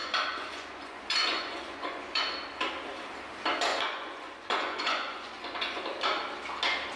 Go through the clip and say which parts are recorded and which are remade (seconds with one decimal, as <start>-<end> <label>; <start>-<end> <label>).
0.0-2.2 remade; 2.2-3.7 recorded; 3.7-5.8 remade; 5.8-7.0 recorded